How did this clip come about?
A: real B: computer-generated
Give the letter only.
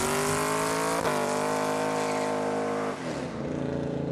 A